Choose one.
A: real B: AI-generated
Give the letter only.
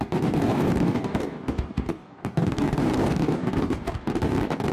B